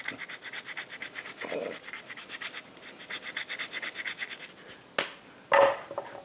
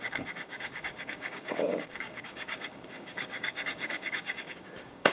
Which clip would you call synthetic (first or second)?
second